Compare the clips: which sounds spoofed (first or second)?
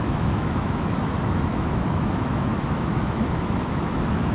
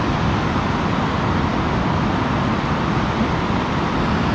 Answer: first